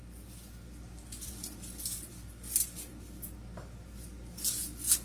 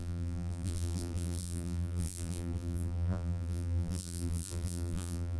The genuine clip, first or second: first